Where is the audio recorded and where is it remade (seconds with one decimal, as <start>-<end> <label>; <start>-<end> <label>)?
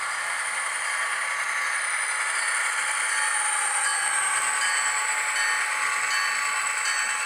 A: 0.0-7.3 recorded